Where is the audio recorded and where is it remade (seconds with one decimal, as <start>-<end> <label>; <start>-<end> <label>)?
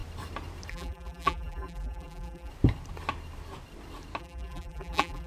0.0-0.7 recorded; 0.7-2.5 remade; 2.5-4.2 recorded; 4.2-5.3 remade